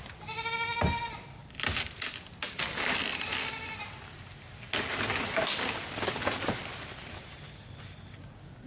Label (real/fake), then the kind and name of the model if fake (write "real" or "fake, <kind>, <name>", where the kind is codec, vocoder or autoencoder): real